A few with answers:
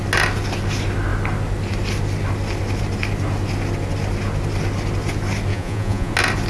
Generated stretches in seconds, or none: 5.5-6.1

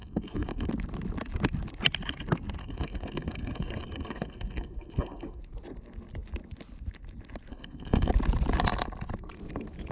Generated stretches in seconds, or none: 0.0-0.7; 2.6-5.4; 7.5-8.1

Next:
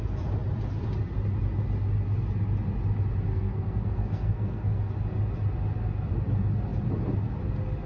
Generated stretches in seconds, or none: 3.3-4.8